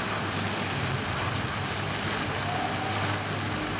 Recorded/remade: recorded